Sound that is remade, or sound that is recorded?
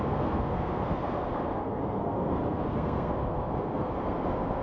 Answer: remade